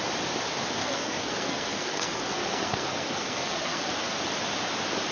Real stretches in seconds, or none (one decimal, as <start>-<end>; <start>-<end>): 0.0-0.8; 3.9-5.1